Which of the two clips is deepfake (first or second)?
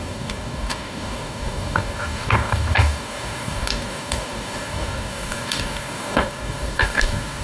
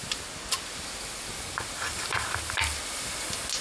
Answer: first